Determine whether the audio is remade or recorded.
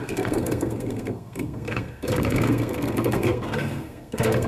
remade